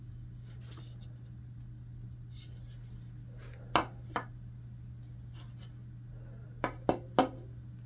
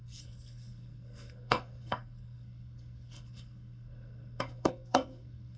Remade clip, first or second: second